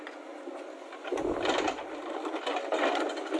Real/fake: real